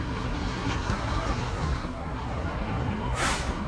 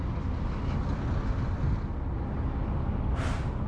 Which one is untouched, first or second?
second